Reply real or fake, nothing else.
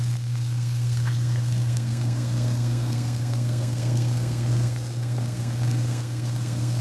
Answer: fake